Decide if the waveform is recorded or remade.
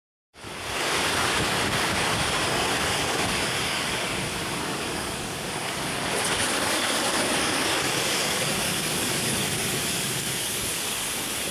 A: remade